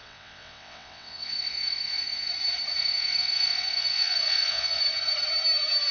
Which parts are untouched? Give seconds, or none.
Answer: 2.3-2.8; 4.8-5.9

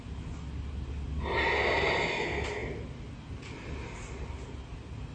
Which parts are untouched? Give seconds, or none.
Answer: 0.0-5.1

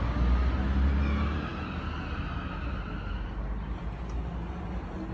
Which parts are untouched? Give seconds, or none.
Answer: 0.0-5.1

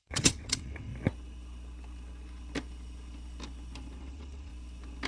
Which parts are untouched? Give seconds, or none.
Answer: 0.9-4.0; 4.5-5.1

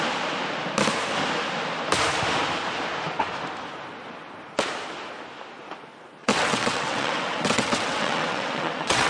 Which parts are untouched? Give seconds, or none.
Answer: 0.0-6.2

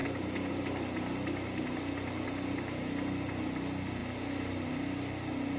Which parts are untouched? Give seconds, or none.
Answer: 0.0-5.6

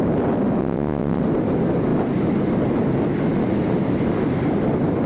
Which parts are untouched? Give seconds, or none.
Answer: 0.0-0.6; 1.2-5.1